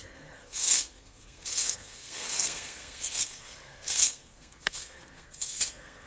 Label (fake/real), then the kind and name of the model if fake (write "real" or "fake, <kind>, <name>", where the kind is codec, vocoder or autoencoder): fake, codec, SNAC